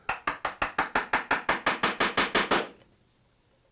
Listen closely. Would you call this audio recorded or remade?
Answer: recorded